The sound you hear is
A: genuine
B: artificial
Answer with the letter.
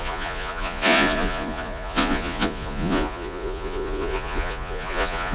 B